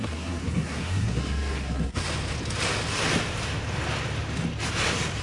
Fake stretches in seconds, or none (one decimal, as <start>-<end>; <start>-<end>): 0.0-2.0